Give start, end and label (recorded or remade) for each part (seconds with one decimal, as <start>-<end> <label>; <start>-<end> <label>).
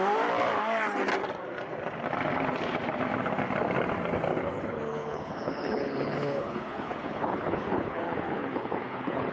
0.0-4.3 recorded; 4.3-9.3 remade